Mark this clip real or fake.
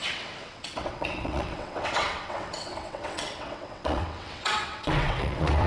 fake